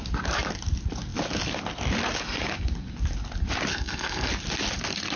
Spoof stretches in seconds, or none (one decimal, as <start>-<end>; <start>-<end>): 3.7-4.3